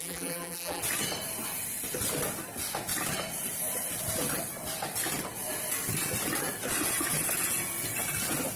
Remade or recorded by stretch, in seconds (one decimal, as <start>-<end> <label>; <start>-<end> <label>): 0.0-0.8 remade; 0.8-8.6 recorded

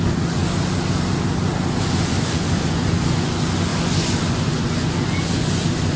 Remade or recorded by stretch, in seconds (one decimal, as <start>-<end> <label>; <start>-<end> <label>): 0.0-0.4 remade; 0.4-1.8 recorded; 1.8-6.0 remade

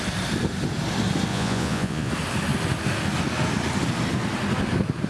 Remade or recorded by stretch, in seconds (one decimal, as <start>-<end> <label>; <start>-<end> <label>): 0.0-1.3 recorded; 1.3-2.1 remade; 2.1-5.1 recorded

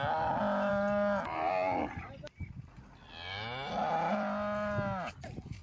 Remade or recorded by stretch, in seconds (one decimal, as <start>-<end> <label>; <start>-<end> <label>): 0.0-5.6 recorded